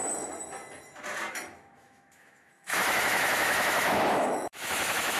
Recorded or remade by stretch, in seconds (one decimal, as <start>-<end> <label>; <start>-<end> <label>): 0.0-1.3 recorded; 1.3-5.2 remade